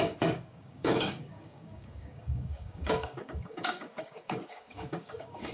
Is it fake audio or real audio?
fake